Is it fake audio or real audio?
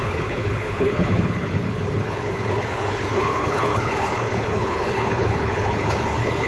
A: fake